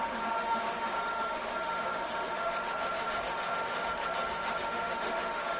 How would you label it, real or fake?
fake